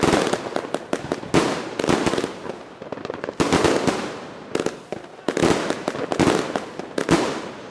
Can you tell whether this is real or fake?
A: real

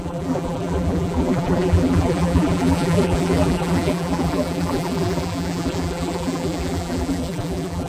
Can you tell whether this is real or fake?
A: fake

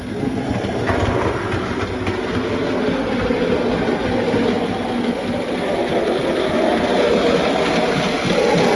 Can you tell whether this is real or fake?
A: real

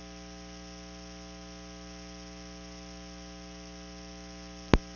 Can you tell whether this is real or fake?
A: real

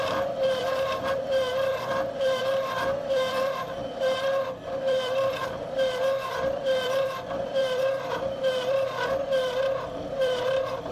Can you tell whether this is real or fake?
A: fake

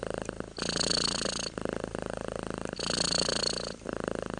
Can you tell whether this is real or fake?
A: real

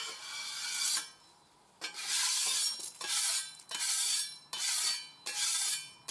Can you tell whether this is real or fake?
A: real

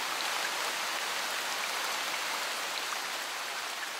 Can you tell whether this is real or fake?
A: real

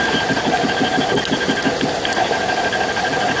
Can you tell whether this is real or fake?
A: real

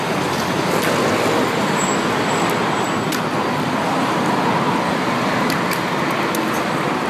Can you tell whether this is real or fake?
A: real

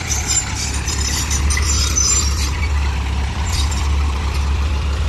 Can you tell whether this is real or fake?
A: fake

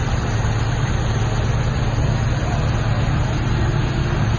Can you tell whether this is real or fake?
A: real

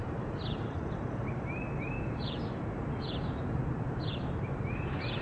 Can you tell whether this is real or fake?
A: fake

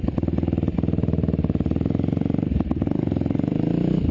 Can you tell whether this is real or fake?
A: real